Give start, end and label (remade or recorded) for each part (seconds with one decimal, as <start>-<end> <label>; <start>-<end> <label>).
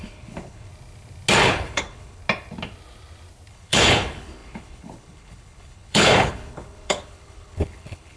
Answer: 0.0-0.7 remade; 0.7-1.4 recorded; 1.4-2.2 remade; 2.2-3.5 recorded; 3.5-8.2 remade